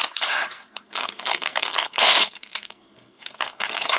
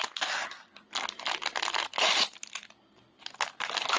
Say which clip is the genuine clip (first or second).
second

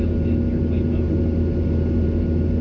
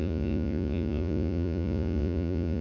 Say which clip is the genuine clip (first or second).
first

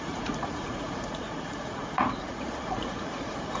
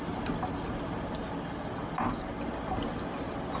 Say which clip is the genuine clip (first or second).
second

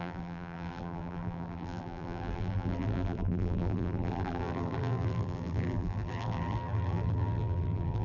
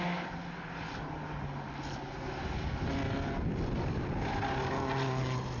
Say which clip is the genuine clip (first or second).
second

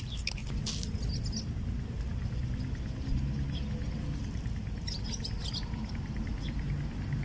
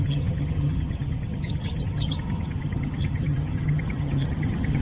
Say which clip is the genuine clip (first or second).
first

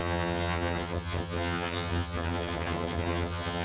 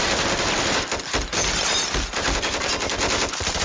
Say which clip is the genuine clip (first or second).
second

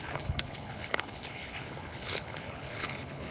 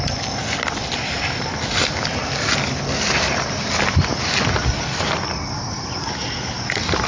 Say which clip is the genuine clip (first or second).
second